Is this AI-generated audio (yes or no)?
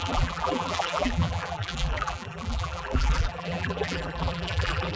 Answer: yes